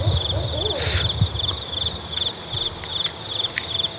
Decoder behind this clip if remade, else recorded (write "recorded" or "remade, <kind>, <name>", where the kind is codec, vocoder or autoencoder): recorded